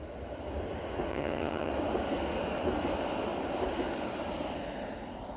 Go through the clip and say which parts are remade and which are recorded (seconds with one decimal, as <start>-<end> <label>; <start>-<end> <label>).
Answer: 0.0-1.1 recorded; 1.1-1.7 remade; 1.7-5.4 recorded

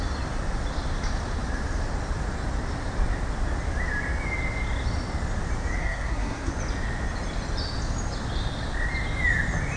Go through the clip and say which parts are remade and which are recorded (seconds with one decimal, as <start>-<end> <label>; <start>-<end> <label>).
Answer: 0.0-5.8 recorded; 5.8-6.5 remade; 6.5-9.8 recorded

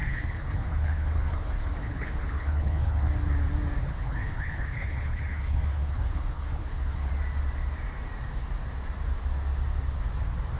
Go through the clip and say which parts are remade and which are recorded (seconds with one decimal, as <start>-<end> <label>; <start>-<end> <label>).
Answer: 0.0-3.1 remade; 3.1-3.8 recorded; 3.8-7.1 remade; 7.1-10.6 recorded

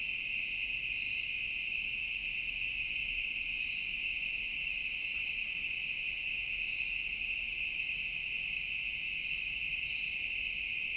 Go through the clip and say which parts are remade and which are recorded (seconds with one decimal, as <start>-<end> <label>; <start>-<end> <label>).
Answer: 0.0-11.0 recorded

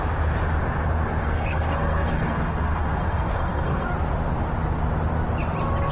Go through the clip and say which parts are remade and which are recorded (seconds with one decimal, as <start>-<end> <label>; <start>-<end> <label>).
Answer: 0.0-1.2 recorded; 1.2-3.9 remade; 3.9-5.9 recorded

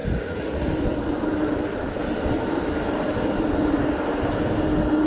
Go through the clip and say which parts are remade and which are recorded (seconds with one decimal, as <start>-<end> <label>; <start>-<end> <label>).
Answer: 0.0-0.7 remade; 0.7-5.1 recorded

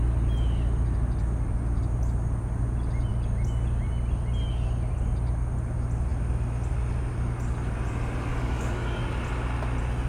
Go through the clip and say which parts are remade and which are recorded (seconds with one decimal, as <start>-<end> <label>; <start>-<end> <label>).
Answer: 0.0-8.3 recorded; 8.3-9.0 remade; 9.0-10.1 recorded